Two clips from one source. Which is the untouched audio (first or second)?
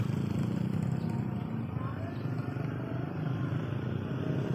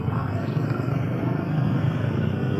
first